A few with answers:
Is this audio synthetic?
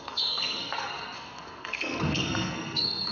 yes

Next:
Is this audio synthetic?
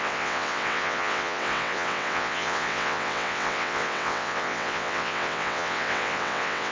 yes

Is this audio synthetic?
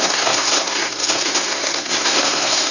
yes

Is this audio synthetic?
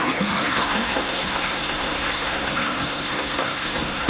yes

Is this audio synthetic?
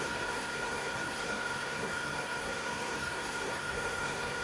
yes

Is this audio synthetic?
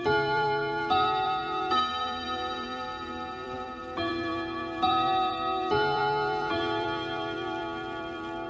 yes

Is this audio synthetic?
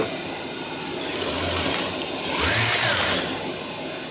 no